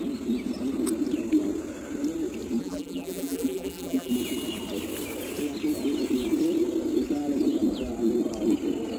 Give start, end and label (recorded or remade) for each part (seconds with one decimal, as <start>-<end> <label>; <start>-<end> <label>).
0.0-2.6 recorded; 2.6-4.1 remade; 4.1-9.0 recorded